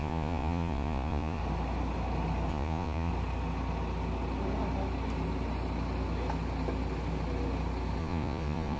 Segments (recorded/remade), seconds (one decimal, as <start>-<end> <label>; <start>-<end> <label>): 0.0-1.4 remade; 1.4-2.5 recorded; 2.5-3.1 remade; 3.1-8.0 recorded; 8.0-8.8 remade